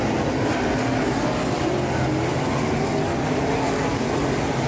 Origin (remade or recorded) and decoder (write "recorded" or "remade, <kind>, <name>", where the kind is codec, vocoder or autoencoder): recorded